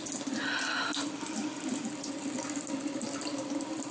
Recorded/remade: recorded